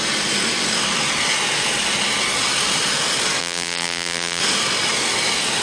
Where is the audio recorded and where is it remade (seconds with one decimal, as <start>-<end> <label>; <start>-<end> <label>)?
0.0-3.4 recorded; 3.4-4.4 remade; 4.4-5.6 recorded

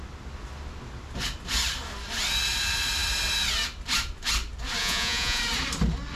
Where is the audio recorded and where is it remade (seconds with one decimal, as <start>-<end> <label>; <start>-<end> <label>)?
0.0-4.8 recorded; 4.8-5.4 remade; 5.4-6.2 recorded

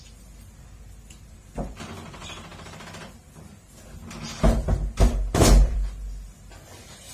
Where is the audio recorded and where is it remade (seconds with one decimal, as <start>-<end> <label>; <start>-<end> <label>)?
0.0-7.1 remade

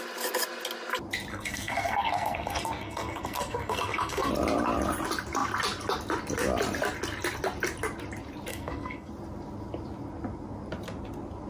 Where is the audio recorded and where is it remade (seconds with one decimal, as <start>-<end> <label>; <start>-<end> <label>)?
0.0-1.3 recorded; 1.3-4.3 remade; 4.3-8.5 recorded; 8.5-9.1 remade; 9.1-11.5 recorded

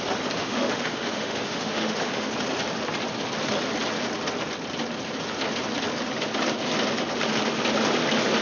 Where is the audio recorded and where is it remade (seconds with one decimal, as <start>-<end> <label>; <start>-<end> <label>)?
0.0-0.4 recorded; 0.4-2.3 remade; 2.3-8.4 recorded

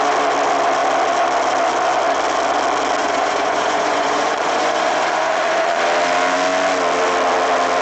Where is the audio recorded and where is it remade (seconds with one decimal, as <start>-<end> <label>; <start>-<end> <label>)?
0.0-3.0 recorded; 3.0-5.8 remade; 5.8-7.8 recorded